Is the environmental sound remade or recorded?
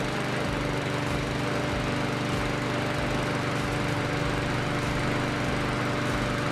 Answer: recorded